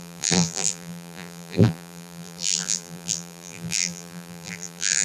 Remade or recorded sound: remade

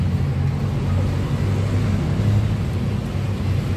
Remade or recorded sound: recorded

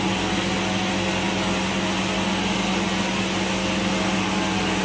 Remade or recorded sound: recorded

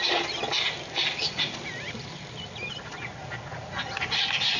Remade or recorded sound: recorded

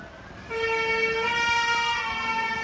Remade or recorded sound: recorded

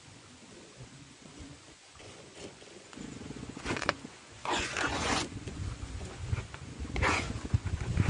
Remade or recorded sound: remade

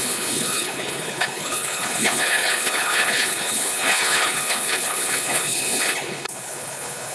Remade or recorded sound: remade